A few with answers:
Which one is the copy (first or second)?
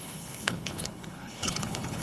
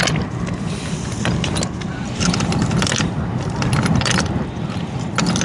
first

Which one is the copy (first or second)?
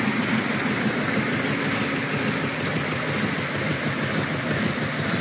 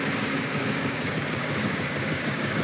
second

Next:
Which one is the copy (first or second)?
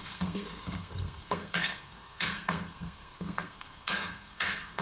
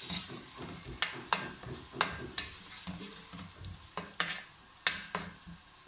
first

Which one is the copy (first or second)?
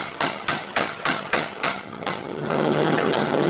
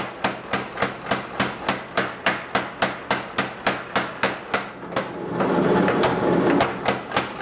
first